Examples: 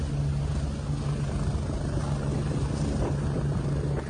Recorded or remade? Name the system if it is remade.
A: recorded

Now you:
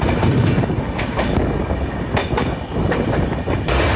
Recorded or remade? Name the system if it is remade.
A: recorded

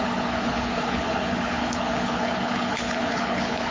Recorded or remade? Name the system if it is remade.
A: remade, codec, HILCodec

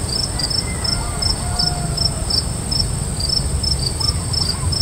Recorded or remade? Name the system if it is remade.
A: recorded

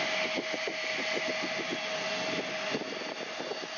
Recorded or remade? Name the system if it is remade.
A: recorded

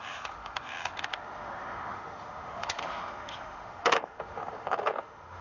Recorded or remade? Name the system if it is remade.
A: remade, autoencoder, DAC-VAE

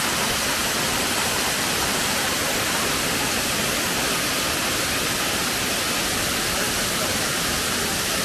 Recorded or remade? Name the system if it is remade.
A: recorded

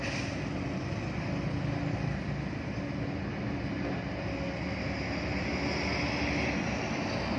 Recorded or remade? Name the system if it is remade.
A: recorded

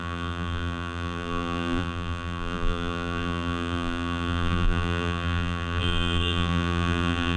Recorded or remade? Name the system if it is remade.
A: remade, vocoder, BigVGAN v2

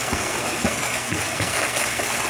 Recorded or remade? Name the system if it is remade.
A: remade, codec, SNAC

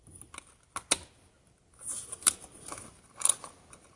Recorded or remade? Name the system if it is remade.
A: recorded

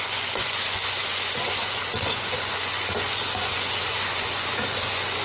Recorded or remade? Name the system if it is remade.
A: remade, vocoder, Vocos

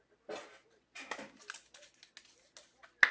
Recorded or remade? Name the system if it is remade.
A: recorded